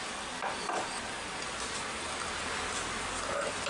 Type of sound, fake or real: real